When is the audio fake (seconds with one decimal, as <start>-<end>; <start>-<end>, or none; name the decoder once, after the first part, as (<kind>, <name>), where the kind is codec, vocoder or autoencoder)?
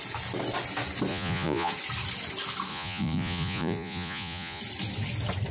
1.1-1.7 (vocoder, Vocos); 2.7-4.6